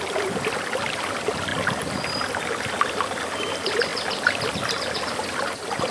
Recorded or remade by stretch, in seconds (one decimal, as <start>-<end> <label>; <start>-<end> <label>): 0.0-5.9 recorded